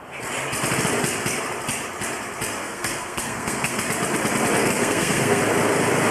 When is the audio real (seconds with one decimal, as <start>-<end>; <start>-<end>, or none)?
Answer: 0.0-2.6; 3.8-4.6; 5.4-6.1